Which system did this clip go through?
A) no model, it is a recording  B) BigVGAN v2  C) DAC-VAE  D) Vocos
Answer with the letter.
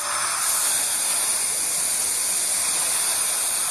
A